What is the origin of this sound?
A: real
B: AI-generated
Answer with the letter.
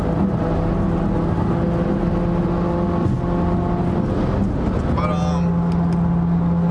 A